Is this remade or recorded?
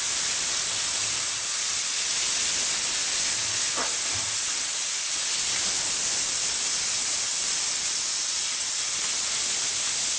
recorded